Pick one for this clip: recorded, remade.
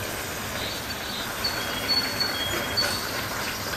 recorded